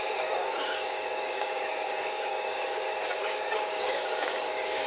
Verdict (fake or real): fake